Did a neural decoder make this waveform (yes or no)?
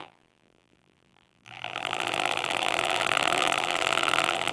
yes